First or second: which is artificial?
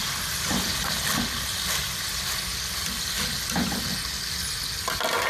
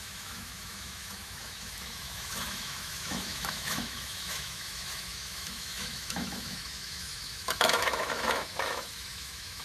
second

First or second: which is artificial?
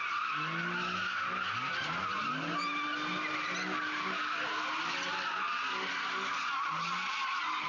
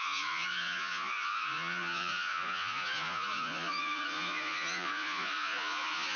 second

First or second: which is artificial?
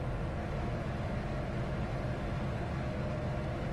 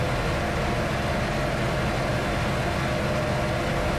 first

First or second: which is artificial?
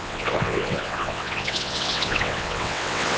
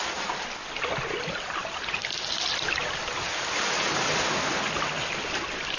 first